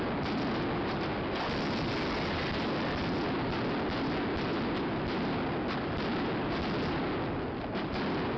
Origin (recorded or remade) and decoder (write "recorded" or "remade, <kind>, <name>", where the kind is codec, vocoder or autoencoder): recorded